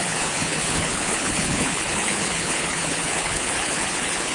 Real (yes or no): no